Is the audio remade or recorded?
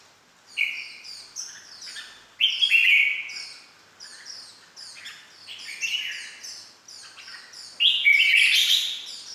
recorded